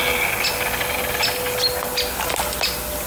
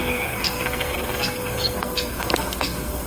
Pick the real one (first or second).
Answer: first